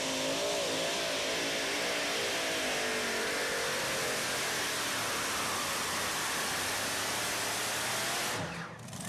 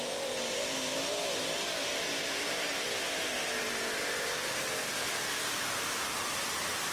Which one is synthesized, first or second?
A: second